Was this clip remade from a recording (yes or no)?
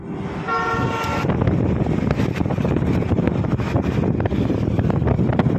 no